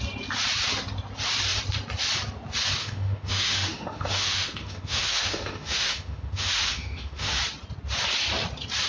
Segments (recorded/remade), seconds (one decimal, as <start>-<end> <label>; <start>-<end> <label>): 0.0-2.8 recorded; 2.8-7.4 remade; 7.4-8.9 recorded